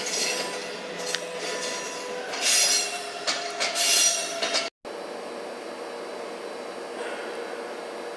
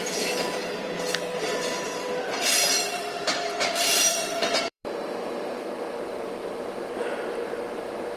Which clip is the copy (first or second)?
second